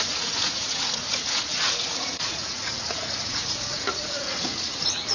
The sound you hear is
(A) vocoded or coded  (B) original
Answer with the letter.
A